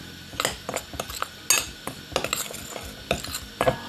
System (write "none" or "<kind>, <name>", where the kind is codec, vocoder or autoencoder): none